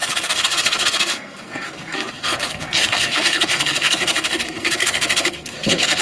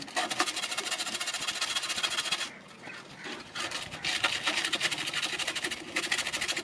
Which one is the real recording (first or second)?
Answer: second